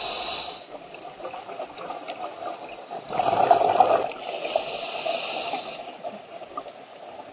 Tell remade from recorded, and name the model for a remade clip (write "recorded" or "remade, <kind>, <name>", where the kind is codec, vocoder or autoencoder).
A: recorded